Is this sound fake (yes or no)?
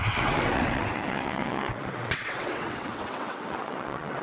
yes